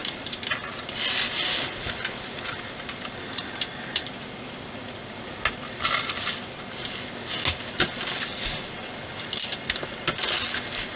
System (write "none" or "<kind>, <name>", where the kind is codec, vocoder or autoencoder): none